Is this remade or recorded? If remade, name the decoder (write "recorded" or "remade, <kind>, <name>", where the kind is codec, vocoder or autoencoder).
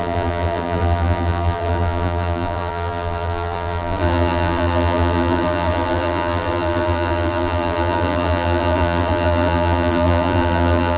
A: remade, vocoder, BigVGAN v2